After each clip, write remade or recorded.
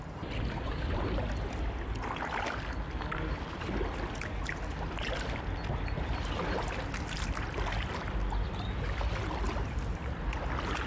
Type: recorded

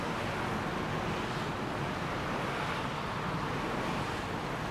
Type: recorded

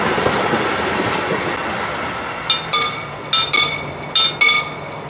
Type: recorded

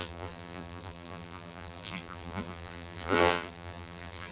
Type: remade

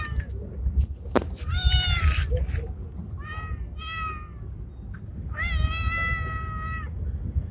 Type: recorded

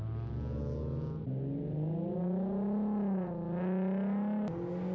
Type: recorded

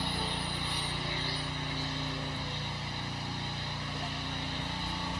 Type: recorded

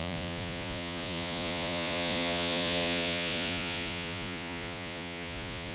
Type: remade